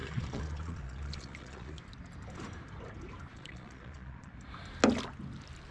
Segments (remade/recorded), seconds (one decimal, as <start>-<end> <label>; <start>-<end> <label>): 0.0-1.8 remade; 1.8-3.3 recorded; 3.3-4.3 remade; 4.3-5.7 recorded

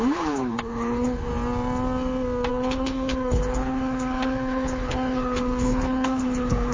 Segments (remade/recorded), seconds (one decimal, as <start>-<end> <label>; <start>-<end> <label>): 0.0-1.3 remade; 1.3-2.5 recorded; 2.5-6.7 remade

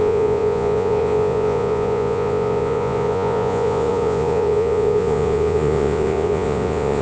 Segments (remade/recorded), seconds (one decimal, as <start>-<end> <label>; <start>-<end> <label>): 0.0-7.0 remade